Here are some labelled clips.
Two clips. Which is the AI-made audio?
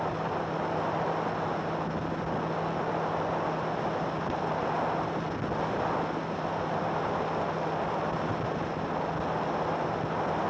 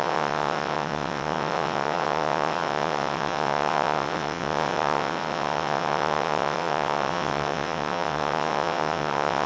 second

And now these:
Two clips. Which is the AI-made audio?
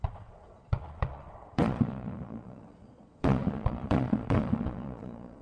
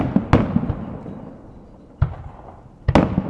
first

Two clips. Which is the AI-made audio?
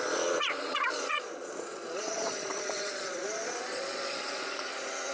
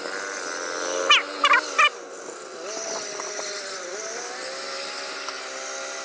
first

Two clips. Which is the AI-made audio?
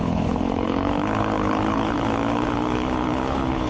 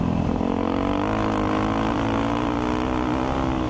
first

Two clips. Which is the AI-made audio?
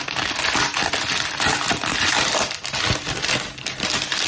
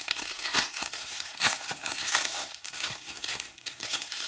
second